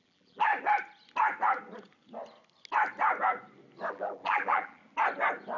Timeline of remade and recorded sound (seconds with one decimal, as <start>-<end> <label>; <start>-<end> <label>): 0.0-0.5 remade; 0.5-3.9 recorded; 3.9-4.8 remade; 4.8-5.6 recorded